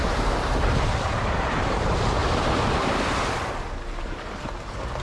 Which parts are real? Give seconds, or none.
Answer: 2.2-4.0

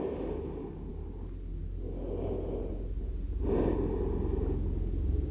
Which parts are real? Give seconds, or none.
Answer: 0.0-5.3

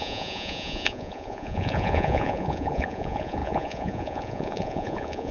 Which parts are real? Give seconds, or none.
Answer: none

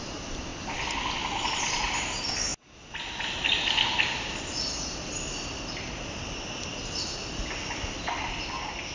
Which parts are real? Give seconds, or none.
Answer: 0.0-8.9

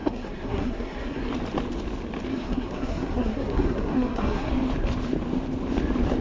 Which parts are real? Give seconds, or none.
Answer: 1.3-2.3; 4.5-6.2

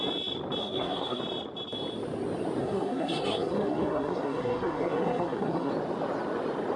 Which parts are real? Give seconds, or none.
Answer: 0.0-0.6; 1.2-2.6; 5.7-6.8